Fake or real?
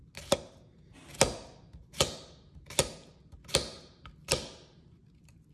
real